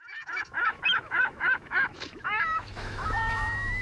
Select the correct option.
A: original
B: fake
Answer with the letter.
B